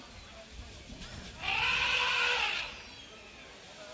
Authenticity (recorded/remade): recorded